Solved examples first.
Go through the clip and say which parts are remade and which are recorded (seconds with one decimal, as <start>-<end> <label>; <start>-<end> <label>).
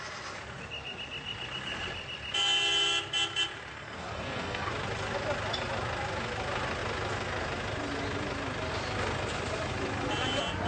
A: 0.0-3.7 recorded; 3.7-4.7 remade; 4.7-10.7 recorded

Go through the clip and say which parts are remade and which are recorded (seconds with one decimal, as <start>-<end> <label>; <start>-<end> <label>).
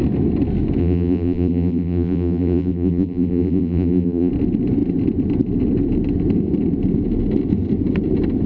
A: 0.0-0.8 recorded; 0.8-4.3 remade; 4.3-8.5 recorded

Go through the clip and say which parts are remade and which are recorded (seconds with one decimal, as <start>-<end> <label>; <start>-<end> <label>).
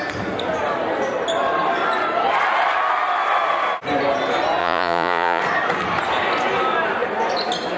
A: 0.0-4.6 recorded; 4.6-5.4 remade; 5.4-7.8 recorded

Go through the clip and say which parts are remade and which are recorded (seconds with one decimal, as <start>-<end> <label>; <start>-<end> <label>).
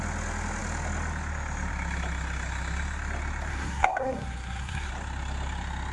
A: 0.0-3.5 recorded; 3.5-4.9 remade; 4.9-5.9 recorded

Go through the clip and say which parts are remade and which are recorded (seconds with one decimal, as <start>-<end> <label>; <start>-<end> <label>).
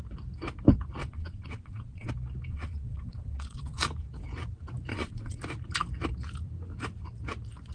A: 0.0-1.0 recorded; 1.0-2.1 remade; 2.1-2.5 recorded; 2.5-3.8 remade; 3.8-4.9 recorded; 4.9-5.4 remade; 5.4-7.7 recorded